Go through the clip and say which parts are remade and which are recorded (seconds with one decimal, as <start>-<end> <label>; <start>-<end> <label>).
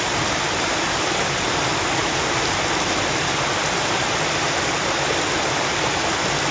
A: 0.0-2.0 remade; 2.0-5.9 recorded; 5.9-6.5 remade